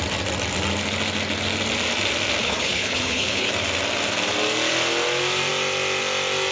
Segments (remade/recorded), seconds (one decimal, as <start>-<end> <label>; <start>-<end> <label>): 0.0-2.4 recorded; 2.4-3.5 remade; 3.5-6.5 recorded